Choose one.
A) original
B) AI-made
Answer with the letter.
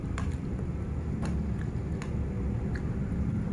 A